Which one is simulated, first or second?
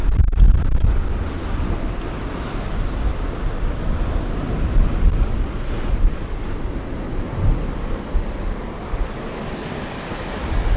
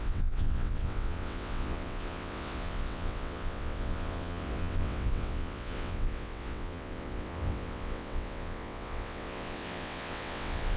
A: second